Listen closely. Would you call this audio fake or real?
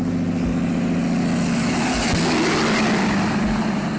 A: real